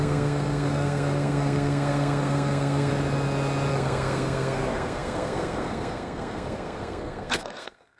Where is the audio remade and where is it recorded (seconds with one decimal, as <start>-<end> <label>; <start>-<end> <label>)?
0.0-2.9 remade; 2.9-3.7 recorded; 3.7-8.0 remade